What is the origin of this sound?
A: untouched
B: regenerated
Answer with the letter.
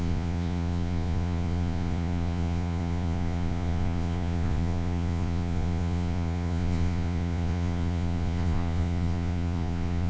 B